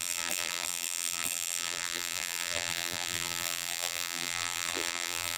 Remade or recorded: remade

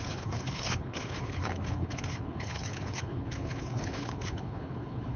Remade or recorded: remade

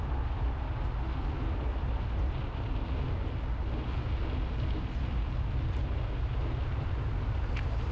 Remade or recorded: recorded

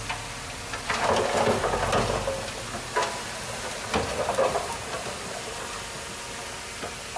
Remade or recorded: recorded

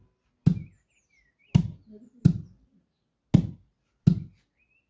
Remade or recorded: recorded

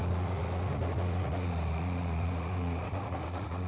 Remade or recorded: remade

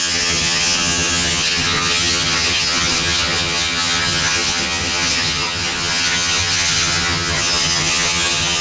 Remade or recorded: remade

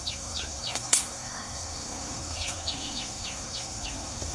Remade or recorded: remade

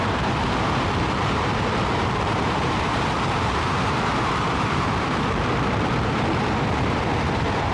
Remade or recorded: remade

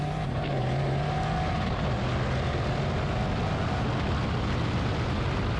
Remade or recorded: recorded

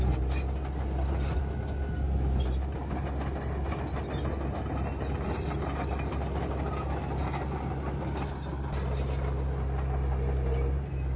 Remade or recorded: recorded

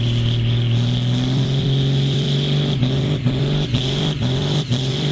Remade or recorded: remade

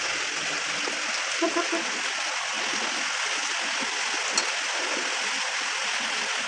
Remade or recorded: recorded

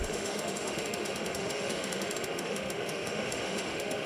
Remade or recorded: remade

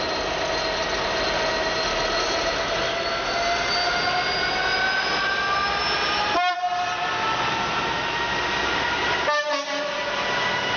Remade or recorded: recorded